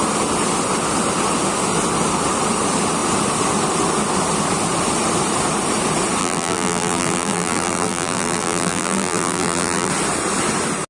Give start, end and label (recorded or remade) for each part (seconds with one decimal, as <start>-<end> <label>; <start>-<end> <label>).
0.0-6.2 recorded; 6.2-9.9 remade; 9.9-10.9 recorded